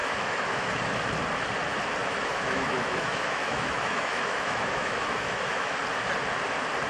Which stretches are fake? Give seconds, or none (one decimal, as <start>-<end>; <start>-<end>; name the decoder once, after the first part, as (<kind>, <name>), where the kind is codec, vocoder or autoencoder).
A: 0.0-0.7 (autoencoder, DAC-VAE); 2.0-5.8